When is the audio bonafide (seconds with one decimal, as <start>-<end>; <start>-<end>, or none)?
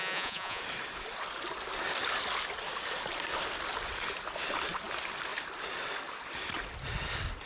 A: 0.6-7.5